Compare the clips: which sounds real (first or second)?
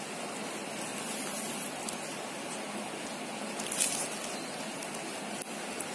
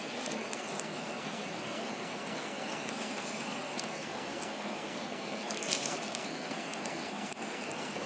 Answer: first